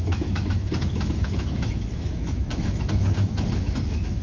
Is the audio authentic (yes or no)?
no